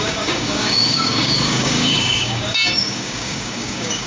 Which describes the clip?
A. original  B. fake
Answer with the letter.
B